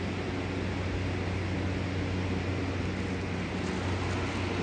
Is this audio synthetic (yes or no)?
no